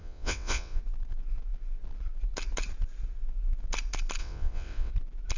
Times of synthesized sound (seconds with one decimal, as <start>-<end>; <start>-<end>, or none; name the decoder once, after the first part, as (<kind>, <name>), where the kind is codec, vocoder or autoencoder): 0.0-0.8 (vocoder, WaveNeXt); 4.2-4.9